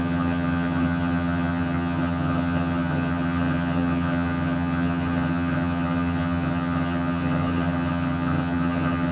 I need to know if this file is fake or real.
fake